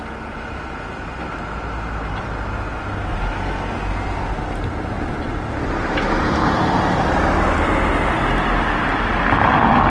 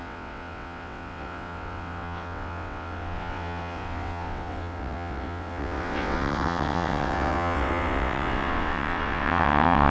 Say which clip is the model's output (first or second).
second